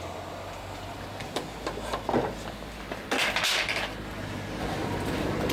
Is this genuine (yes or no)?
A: yes